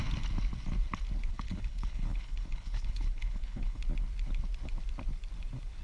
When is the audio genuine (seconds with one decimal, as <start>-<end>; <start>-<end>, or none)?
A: 0.0-1.3; 3.8-5.8